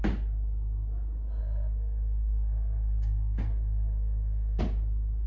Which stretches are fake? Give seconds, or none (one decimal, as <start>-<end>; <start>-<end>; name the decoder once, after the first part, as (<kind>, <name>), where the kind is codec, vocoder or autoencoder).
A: 1.4-4.6 (codec, SNAC)